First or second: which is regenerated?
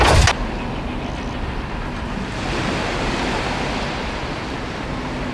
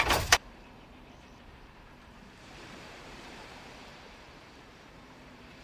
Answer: second